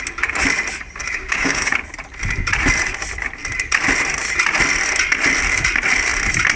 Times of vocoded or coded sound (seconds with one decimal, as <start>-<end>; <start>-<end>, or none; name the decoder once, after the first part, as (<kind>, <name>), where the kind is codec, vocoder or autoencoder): 1.0-1.7 (codec, DAC)